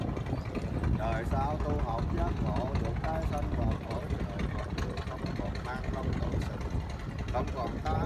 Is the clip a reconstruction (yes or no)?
no